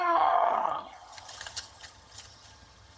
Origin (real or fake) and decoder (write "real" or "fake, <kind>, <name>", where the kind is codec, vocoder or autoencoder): fake, vocoder, HiFi-GAN